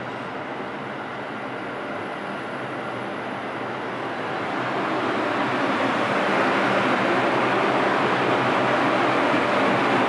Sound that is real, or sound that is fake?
real